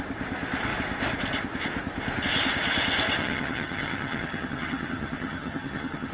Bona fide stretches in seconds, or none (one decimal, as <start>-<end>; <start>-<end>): 0.0-3.2